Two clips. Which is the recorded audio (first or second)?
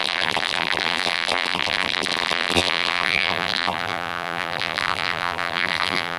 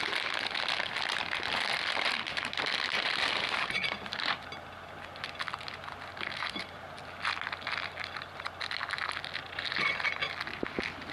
second